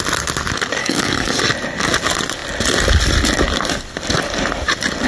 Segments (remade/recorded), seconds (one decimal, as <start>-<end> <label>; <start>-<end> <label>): 0.0-0.8 recorded; 0.8-1.4 remade; 1.4-5.1 recorded

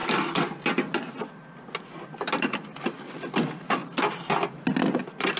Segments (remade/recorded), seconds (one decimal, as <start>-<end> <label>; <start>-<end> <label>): 0.0-5.4 recorded

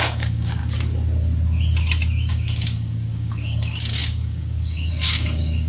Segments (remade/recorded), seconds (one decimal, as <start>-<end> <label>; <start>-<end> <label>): 0.0-0.6 remade; 0.6-2.3 recorded; 2.3-5.7 remade

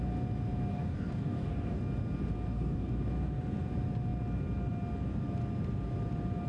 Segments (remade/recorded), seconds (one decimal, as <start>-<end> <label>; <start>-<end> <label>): 0.0-0.7 recorded; 0.7-1.8 remade; 1.8-2.5 recorded; 2.5-3.1 remade; 3.1-6.5 recorded

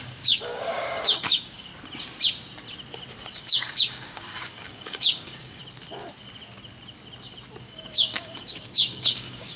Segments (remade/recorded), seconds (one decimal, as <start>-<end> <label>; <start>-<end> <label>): 0.0-1.7 remade; 1.7-3.3 recorded; 3.3-5.6 remade; 5.6-7.6 recorded; 7.6-9.6 remade

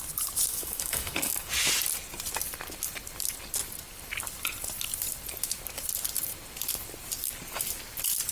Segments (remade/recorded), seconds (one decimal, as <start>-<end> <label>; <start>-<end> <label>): 0.0-0.5 recorded; 0.5-1.5 remade; 1.5-8.3 recorded

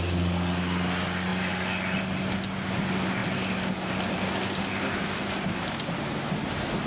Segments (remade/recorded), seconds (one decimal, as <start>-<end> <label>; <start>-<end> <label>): 0.0-6.9 recorded